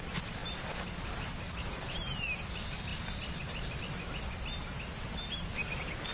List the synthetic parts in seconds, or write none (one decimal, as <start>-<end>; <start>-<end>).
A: none